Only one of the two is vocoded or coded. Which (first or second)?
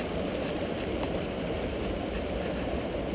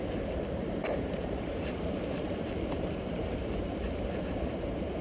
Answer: second